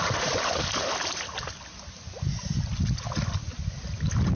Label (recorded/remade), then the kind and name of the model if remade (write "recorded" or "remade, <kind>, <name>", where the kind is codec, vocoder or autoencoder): recorded